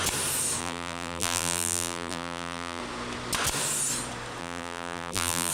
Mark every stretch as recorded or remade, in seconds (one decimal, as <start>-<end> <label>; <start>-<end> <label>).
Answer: 0.0-0.6 recorded; 0.6-2.8 remade; 2.8-4.4 recorded; 4.4-5.5 remade